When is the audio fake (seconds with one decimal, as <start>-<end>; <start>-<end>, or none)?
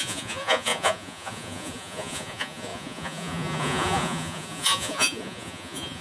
0.0-6.0